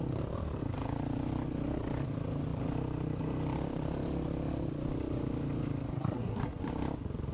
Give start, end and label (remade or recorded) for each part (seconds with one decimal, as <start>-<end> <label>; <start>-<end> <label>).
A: 0.0-5.9 recorded; 5.9-6.7 remade; 6.7-7.3 recorded